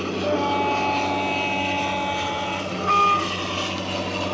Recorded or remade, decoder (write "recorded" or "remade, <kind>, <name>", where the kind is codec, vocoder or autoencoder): recorded